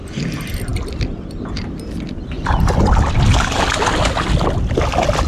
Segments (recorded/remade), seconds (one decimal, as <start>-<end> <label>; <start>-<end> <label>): 0.0-5.3 recorded